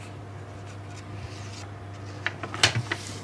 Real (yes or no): yes